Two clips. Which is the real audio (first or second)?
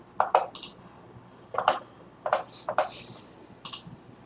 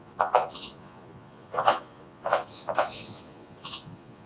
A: first